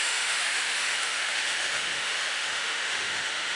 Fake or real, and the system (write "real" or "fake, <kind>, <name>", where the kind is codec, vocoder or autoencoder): fake, autoencoder, DAC-VAE